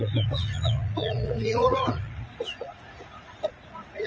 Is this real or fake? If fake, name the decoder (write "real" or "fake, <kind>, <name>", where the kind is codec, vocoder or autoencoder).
fake, vocoder, Vocos